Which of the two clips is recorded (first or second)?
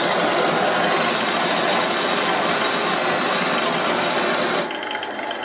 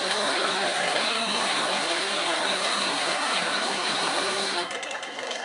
first